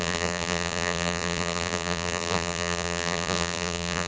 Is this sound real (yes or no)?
no